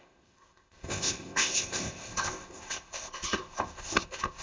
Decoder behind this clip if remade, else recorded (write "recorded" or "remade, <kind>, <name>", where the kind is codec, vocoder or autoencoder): remade, codec, ZipCodec